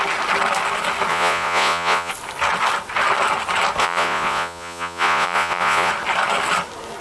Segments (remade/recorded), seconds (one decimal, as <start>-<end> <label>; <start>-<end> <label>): 0.0-1.1 recorded; 1.1-2.1 remade; 2.1-3.8 recorded; 3.8-5.9 remade; 5.9-7.0 recorded